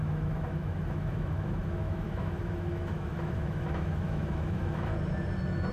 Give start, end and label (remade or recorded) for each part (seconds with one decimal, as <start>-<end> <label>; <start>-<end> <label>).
0.0-4.9 remade; 4.9-5.7 recorded